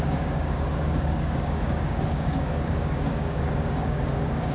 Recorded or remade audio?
remade